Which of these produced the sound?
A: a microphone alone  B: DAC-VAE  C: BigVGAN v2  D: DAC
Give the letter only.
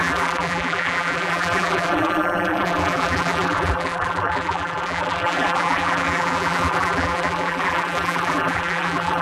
C